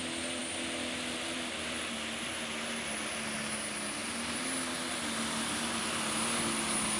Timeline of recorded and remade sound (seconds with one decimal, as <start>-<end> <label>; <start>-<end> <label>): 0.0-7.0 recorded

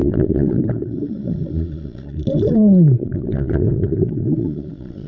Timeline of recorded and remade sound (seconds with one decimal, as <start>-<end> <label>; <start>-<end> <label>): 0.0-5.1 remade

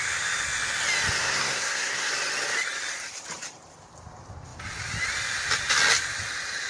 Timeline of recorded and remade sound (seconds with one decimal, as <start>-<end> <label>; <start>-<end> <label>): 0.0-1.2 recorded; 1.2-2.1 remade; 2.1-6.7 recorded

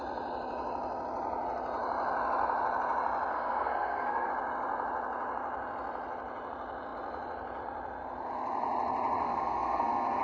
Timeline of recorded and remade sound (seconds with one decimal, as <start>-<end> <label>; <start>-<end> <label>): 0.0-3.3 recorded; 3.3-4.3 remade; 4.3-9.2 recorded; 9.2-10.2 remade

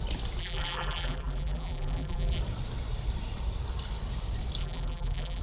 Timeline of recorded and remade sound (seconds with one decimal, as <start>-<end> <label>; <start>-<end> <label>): 0.0-0.4 recorded; 0.4-2.4 remade; 2.4-4.6 recorded; 4.6-5.4 remade